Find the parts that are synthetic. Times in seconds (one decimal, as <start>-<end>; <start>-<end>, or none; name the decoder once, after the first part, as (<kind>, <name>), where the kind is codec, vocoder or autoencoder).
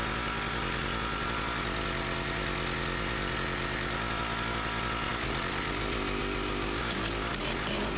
5.1-6.2 (vocoder, BigVGAN v2)